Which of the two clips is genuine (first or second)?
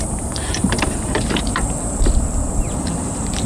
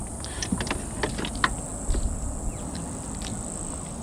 second